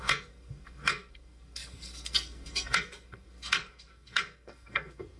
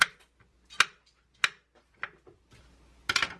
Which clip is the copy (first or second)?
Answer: first